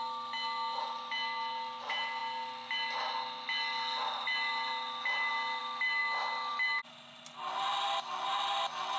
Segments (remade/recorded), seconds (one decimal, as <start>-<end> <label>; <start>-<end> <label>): 0.0-9.0 recorded